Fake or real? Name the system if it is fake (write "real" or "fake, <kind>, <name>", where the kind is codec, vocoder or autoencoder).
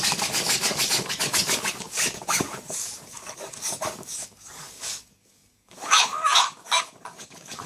fake, codec, DAC